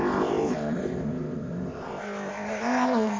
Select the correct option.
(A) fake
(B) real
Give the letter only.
A